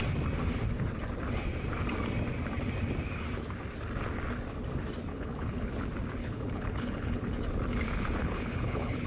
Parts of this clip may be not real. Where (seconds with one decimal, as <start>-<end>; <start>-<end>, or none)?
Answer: 5.1-5.7; 6.2-7.3; 8.2-9.1